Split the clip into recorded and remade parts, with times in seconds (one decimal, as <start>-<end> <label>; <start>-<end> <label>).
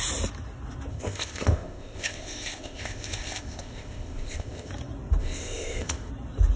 0.0-0.9 recorded; 0.9-4.7 remade; 4.7-5.2 recorded; 5.2-6.1 remade; 6.1-6.6 recorded